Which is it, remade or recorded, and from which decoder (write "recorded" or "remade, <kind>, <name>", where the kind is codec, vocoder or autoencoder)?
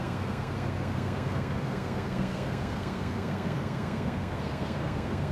remade, codec, SNAC